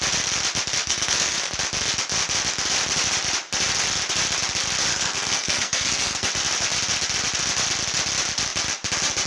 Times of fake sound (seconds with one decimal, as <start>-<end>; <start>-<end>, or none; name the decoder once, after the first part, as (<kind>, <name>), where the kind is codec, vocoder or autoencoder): 0.8-1.5 (codec, SNAC); 4.9-6.3